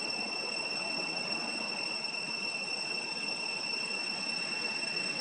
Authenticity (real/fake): fake